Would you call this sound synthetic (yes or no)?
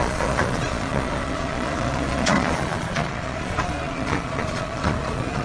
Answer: yes